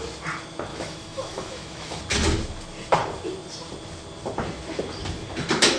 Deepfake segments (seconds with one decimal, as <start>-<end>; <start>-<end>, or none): 0.7-2.0